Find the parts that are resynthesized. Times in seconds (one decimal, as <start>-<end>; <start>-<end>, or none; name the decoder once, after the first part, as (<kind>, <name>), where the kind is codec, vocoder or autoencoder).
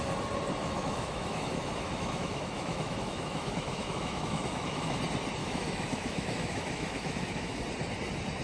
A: 0.6-5.0 (autoencoder, DAC-VAE); 5.4-7.6